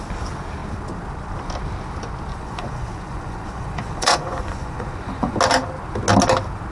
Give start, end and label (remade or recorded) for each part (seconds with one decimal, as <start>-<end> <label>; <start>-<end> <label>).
0.0-2.3 recorded; 2.3-5.4 remade; 5.4-6.7 recorded